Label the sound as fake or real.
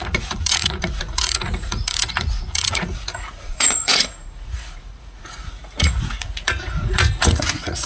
fake